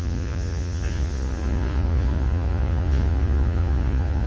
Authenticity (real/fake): fake